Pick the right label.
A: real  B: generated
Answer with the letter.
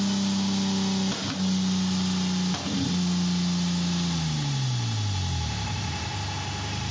A